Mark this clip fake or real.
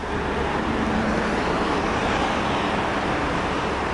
real